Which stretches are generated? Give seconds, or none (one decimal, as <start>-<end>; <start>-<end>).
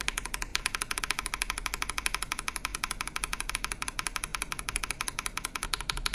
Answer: none